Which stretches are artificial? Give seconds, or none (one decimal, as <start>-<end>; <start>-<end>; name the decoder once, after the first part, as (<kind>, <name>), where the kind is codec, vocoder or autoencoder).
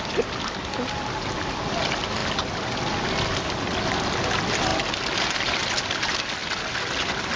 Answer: none